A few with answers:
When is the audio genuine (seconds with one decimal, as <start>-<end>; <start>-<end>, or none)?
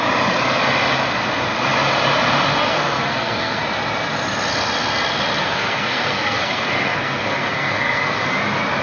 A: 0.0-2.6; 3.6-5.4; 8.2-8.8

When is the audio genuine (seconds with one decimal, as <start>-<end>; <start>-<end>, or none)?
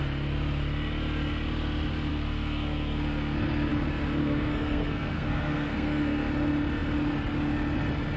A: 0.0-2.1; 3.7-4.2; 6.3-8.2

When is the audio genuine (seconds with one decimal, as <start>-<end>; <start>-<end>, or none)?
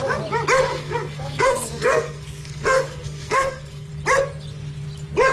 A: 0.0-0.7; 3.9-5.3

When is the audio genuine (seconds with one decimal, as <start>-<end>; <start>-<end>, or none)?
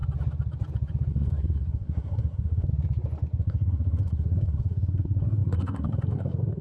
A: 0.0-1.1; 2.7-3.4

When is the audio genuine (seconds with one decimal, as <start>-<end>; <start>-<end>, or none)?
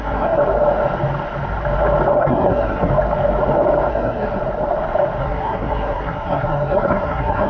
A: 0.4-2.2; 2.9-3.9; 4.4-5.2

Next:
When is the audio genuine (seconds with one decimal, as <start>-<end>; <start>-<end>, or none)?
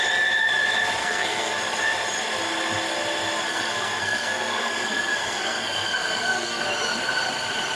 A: 0.0-1.0; 1.6-3.5; 6.6-7.7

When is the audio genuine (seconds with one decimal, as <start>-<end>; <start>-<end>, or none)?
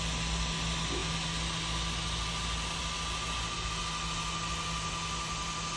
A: 0.0-5.8